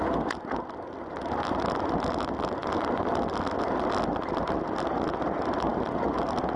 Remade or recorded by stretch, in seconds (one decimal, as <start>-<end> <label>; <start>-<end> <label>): 0.0-6.6 recorded